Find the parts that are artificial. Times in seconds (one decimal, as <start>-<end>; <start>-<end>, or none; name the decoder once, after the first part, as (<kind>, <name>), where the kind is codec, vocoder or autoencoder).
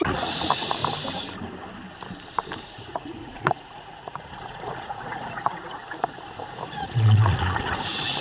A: 0.0-0.8 (vocoder, Vocos); 2.6-5.8; 6.5-8.2